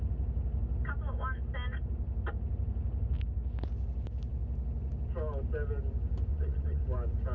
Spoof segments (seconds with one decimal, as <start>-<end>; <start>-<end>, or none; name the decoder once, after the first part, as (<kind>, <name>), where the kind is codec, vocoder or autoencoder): 6.3-6.8 (vocoder, Vocos)